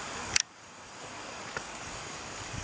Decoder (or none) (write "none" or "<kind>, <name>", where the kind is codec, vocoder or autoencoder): codec, DAC